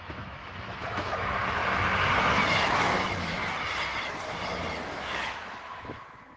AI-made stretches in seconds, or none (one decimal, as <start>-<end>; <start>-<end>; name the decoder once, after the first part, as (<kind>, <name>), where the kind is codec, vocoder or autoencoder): 0.0-1.6 (autoencoder, DAC-VAE); 2.2-3.4; 4.9-6.4